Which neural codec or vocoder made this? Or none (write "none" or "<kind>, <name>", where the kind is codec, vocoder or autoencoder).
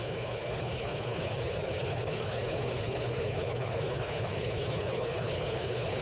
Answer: codec, HILCodec